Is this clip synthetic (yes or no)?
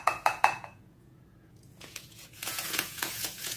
yes